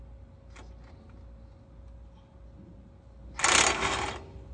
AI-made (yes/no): no